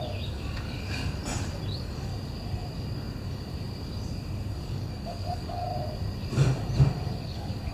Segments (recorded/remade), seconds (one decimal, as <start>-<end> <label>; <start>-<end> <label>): 0.0-1.2 remade; 1.2-1.7 recorded; 1.7-2.1 remade; 2.1-4.5 recorded; 4.5-5.7 remade; 5.7-6.8 recorded; 6.8-7.7 remade